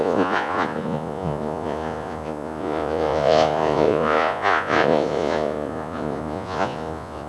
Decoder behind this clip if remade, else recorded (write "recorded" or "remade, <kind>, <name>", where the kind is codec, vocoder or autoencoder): remade, vocoder, Vocos